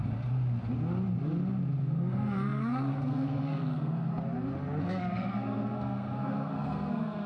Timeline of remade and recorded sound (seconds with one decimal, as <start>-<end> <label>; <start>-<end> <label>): 0.0-1.8 recorded; 1.8-4.1 remade; 4.1-4.8 recorded; 4.8-7.3 remade